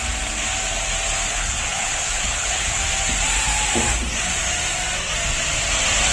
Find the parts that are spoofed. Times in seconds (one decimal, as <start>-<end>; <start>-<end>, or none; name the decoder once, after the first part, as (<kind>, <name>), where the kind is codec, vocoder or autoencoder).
1.3-2.8 (codec, HILCodec)